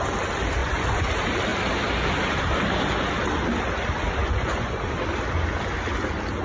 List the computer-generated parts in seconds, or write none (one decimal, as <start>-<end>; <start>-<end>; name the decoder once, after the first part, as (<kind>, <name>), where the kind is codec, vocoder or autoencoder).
0.6-1.1 (vocoder, Vocos); 4.2-4.8